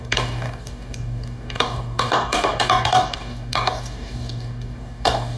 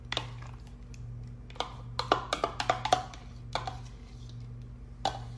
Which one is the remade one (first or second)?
first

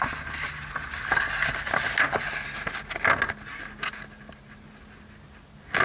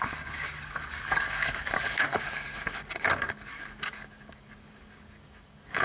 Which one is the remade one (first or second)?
second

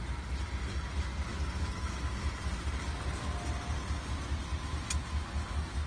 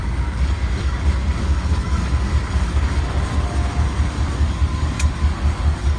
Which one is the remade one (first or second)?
second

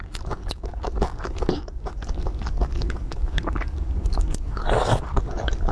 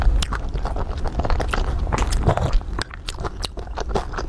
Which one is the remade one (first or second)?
first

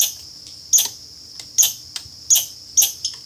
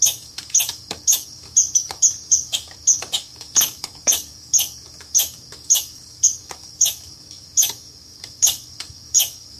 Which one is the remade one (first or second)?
second